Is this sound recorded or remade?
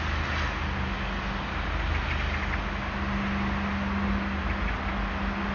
recorded